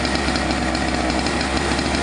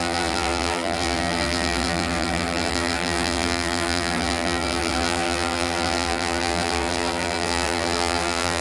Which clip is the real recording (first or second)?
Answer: first